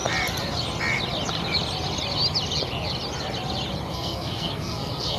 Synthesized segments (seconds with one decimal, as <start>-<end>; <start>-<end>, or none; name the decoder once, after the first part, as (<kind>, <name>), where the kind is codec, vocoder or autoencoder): 3.9-5.2 (codec, SNAC)